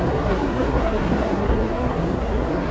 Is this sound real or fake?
fake